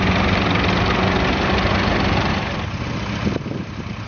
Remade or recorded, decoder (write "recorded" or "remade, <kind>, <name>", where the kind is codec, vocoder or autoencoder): recorded